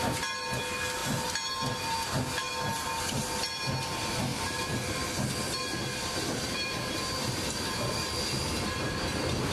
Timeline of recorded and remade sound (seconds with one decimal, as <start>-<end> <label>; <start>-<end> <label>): 0.0-4.3 recorded; 4.3-5.0 remade; 5.0-5.8 recorded; 5.8-8.9 remade; 8.9-9.5 recorded